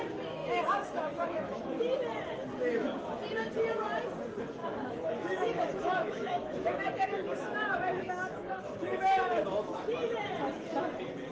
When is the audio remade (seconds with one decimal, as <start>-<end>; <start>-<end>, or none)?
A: 0.4-1.8; 4.6-9.8